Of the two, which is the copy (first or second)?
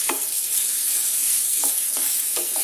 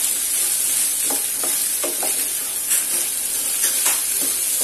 first